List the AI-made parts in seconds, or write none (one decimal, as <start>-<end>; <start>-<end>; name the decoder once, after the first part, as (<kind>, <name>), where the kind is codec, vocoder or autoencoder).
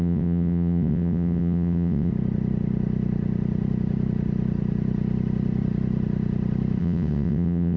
0.0-2.1 (vocoder, WaveNeXt); 6.8-7.8